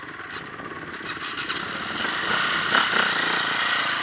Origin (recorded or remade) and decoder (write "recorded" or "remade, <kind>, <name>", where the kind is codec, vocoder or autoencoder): recorded